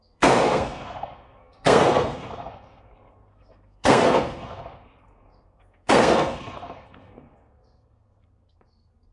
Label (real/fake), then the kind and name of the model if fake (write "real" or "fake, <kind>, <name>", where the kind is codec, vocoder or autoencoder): fake, codec, SNAC